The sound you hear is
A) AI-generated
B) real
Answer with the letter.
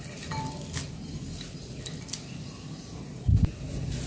B